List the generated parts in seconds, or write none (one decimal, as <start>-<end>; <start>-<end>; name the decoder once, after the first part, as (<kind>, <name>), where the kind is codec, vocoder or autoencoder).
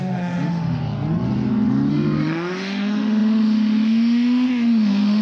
0.0-0.8 (autoencoder, DAC-VAE); 1.9-5.2